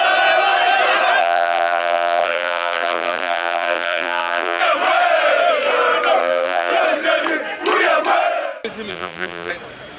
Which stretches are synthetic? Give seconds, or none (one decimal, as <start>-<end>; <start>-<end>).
1.2-4.6; 6.2-6.7; 8.9-9.5